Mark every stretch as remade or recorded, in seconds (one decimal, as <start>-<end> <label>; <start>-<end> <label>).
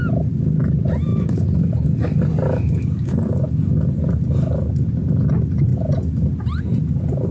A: 0.0-7.3 recorded